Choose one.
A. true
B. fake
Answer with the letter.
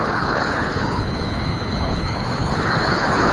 B